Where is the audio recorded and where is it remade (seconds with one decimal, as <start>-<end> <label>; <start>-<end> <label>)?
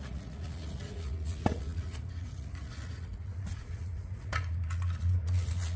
0.0-5.8 remade